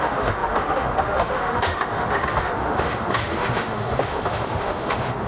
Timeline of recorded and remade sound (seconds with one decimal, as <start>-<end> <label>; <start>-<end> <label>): 0.0-5.3 remade